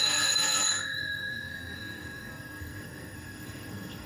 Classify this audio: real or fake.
fake